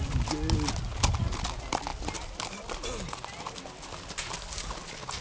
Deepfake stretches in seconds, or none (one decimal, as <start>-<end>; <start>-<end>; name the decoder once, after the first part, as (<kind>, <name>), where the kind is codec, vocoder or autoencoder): none